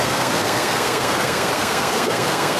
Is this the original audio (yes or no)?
no